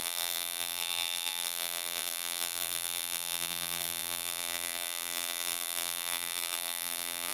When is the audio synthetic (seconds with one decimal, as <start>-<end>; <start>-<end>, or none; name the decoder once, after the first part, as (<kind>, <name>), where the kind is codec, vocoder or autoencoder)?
0.0-7.3 (vocoder, BigVGAN v2)